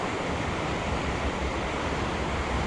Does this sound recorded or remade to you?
recorded